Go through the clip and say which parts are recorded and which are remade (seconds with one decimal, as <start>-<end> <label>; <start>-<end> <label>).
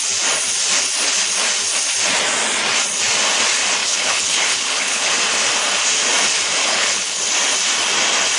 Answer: 0.0-3.8 recorded; 3.8-5.1 remade; 5.1-6.6 recorded; 6.6-7.2 remade; 7.2-8.4 recorded